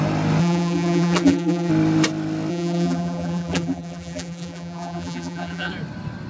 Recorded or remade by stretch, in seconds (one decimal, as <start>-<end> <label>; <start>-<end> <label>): 0.0-0.4 recorded; 0.4-1.7 remade; 1.7-2.5 recorded; 2.5-5.7 remade; 5.7-6.3 recorded